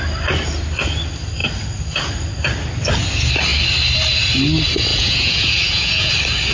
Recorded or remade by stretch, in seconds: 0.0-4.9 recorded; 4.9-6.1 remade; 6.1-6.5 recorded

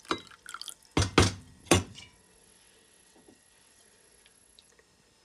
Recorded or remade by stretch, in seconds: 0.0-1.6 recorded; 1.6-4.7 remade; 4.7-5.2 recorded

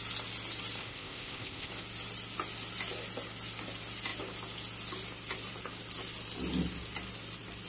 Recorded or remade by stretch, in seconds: 0.0-0.8 recorded; 0.8-1.7 remade; 1.7-7.7 recorded

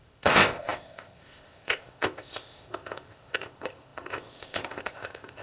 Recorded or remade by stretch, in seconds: 0.0-5.4 remade